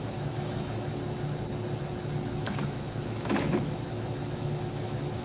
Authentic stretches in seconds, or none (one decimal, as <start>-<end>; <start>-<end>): 0.9-2.3